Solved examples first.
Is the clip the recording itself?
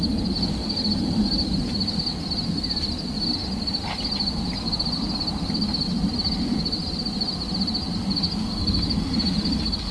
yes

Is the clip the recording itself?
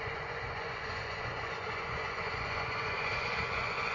no